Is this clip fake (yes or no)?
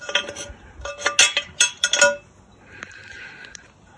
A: no